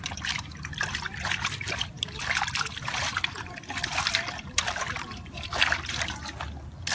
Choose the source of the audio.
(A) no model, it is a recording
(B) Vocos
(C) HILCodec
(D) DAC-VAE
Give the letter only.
A